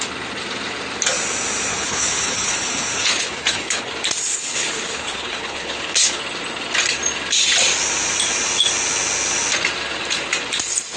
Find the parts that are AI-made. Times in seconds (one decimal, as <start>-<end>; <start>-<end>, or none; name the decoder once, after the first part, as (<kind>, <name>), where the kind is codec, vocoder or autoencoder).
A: 1.7-3.9 (codec, HILCodec); 4.3-6.2